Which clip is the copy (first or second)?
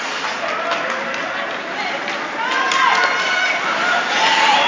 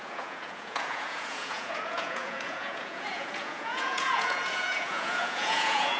second